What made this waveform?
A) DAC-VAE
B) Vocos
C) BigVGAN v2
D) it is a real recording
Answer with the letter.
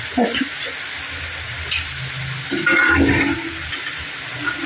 C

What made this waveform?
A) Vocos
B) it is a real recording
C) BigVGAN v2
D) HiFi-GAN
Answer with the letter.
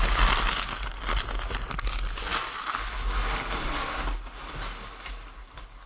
B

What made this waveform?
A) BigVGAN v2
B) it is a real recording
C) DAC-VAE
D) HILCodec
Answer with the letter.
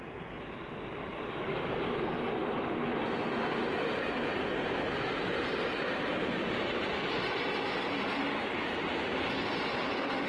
B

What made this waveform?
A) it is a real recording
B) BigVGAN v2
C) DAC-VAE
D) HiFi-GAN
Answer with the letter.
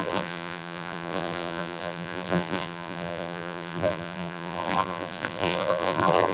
B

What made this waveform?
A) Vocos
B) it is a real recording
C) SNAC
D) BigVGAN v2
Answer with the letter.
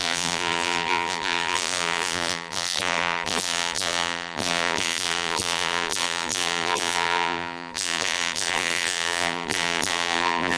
D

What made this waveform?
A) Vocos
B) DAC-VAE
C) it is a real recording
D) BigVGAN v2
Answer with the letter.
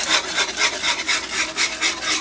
D